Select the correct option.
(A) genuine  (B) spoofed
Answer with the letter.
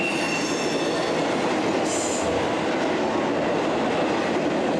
A